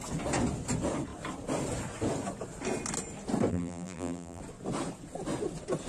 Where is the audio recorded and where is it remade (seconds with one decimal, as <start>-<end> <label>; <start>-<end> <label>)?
0.0-3.5 recorded; 3.5-4.4 remade; 4.4-5.9 recorded